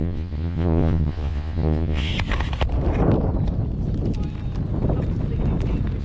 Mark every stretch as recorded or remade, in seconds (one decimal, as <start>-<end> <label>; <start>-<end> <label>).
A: 0.0-2.1 remade; 2.1-6.0 recorded